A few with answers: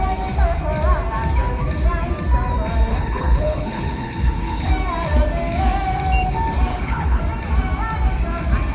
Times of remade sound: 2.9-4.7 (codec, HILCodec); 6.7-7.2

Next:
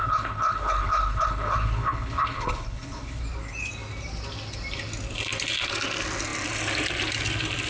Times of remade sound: 0.0-3.2 (codec, HILCodec)

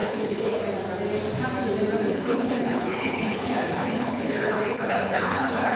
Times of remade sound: 0.0-0.6 (codec, HILCodec); 2.1-5.8